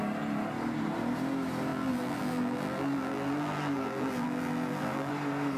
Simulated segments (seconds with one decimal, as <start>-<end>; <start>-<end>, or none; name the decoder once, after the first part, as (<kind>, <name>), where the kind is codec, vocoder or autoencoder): 1.7-5.1 (vocoder, BigVGAN v2)

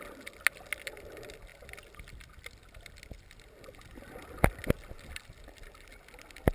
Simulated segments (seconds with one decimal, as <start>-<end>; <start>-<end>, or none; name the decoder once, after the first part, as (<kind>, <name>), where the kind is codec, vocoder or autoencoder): none

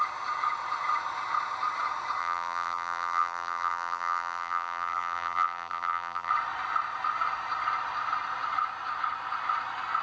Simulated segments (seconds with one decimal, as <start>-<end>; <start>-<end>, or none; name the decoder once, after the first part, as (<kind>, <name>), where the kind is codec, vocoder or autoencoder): 2.2-6.3 (vocoder, BigVGAN v2)

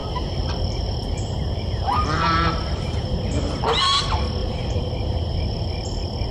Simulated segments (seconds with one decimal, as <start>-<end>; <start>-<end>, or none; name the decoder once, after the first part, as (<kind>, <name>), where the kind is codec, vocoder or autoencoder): 0.0-3.8 (vocoder, BigVGAN v2); 4.4-4.9

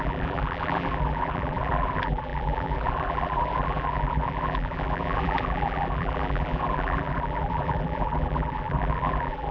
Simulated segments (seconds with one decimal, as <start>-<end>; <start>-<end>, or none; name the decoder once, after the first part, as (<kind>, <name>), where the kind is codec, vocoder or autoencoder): 0.0-9.5 (vocoder, BigVGAN v2)

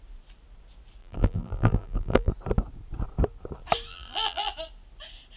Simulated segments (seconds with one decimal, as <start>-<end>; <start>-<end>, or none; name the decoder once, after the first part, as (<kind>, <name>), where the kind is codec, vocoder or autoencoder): 1.0-2.3 (vocoder, BigVGAN v2); 3.9-4.5